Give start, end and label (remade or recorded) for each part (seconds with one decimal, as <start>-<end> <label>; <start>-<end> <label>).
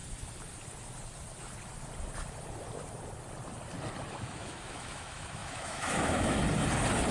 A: 0.0-4.1 recorded; 4.1-6.4 remade; 6.4-7.1 recorded